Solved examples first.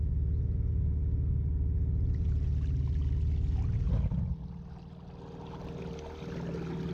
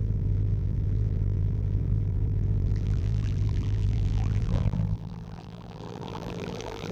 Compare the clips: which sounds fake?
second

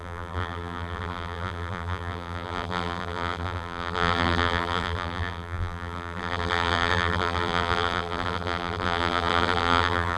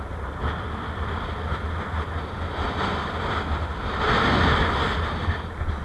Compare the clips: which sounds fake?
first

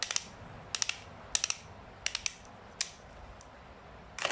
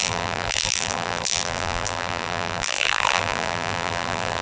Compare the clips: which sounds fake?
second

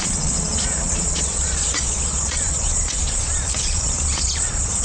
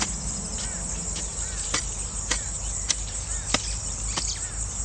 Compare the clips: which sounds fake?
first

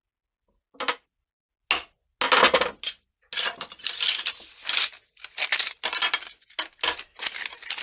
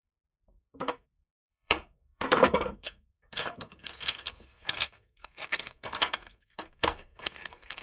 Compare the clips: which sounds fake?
second